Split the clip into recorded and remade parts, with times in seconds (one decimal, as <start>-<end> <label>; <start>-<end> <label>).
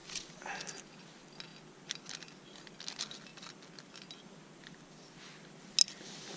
0.0-6.4 recorded